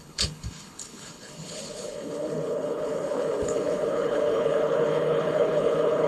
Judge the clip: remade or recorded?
remade